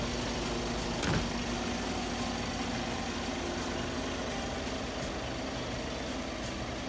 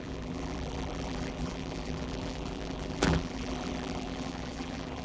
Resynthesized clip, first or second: second